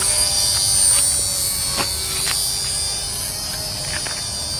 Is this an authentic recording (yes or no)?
yes